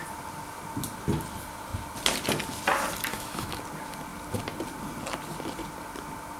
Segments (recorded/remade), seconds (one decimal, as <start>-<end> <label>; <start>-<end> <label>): 0.0-3.1 recorded; 3.1-3.6 remade; 3.6-6.4 recorded